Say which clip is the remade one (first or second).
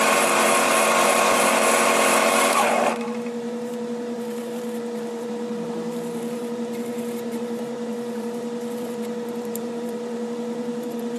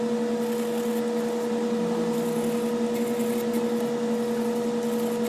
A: first